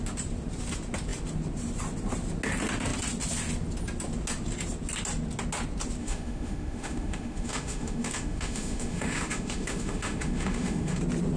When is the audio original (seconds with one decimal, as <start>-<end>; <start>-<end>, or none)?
0.0-6.0; 11.0-11.4